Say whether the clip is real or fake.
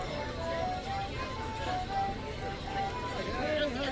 real